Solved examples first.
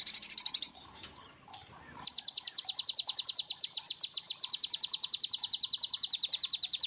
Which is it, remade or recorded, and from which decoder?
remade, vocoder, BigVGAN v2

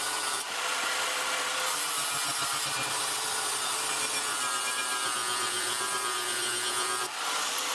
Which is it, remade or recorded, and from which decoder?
recorded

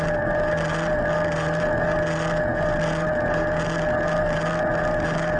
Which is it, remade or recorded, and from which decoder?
recorded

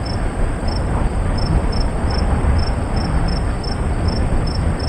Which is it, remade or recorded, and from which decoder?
remade, vocoder, BigVGAN v2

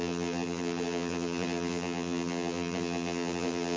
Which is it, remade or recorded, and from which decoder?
remade, vocoder, BigVGAN v2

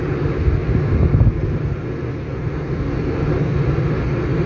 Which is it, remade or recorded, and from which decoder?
recorded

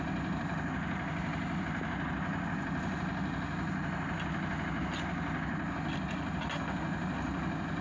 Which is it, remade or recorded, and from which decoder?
recorded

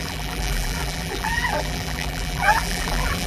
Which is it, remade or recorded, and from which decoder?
remade, vocoder, BigVGAN v2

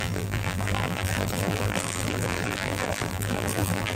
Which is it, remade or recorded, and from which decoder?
remade, vocoder, BigVGAN v2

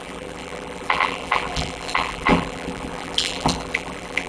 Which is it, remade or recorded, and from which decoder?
remade, vocoder, BigVGAN v2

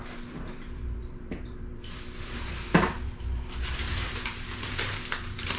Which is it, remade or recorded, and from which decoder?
remade, vocoder, BigVGAN v2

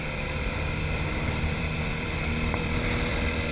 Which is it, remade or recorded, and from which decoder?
remade, vocoder, BigVGAN v2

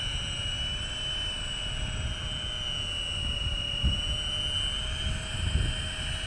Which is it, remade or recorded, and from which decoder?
recorded